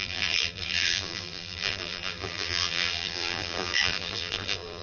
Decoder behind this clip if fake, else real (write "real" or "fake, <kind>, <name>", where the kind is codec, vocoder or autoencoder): fake, vocoder, BigVGAN v2